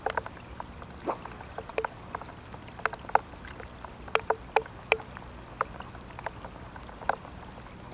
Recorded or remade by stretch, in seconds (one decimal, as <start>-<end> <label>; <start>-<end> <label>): 0.0-7.9 recorded